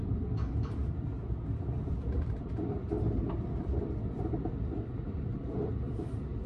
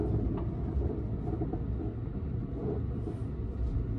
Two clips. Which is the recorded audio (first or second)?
second